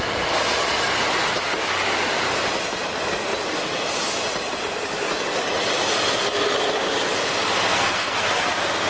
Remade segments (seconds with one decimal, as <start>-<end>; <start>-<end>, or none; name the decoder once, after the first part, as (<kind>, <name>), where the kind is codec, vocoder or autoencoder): 7.7-8.5 (codec, SNAC)